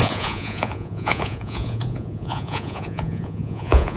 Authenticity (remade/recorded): remade